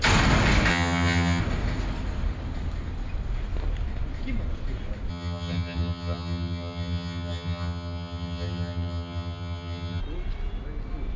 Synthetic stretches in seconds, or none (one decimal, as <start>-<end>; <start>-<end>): 0.7-1.4; 5.1-10.0